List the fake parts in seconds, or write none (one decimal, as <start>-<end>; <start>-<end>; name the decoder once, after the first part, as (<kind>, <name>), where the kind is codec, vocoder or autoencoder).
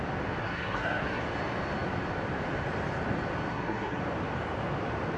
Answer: 0.4-1.2 (codec, SNAC); 3.5-4.0